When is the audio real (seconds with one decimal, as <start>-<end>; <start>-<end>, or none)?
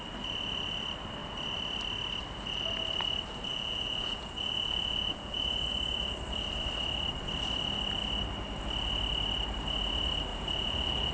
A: 0.0-3.5; 5.7-10.3